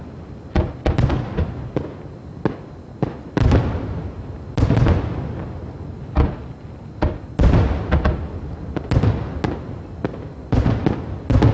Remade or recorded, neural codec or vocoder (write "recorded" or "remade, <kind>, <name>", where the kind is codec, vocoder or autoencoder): recorded